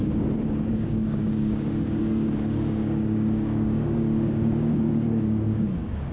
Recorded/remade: remade